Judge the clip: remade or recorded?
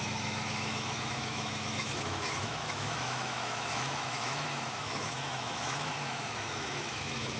remade